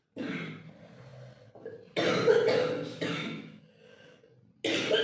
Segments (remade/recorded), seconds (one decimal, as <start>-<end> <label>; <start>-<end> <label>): 0.0-2.9 recorded; 2.9-3.6 remade; 3.6-5.0 recorded